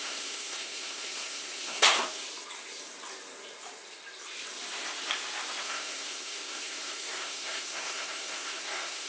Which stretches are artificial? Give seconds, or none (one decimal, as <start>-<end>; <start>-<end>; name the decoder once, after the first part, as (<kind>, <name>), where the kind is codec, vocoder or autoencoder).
0.0-2.2 (codec, SNAC); 5.6-9.1